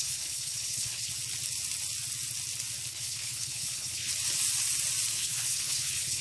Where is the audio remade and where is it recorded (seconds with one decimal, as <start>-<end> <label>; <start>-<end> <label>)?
0.0-1.1 remade; 1.1-2.9 recorded; 2.9-4.1 remade; 4.1-5.1 recorded; 5.1-6.2 remade